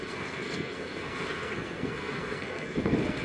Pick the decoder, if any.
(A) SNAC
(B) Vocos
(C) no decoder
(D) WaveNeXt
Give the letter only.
A